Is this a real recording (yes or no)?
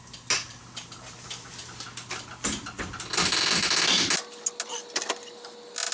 yes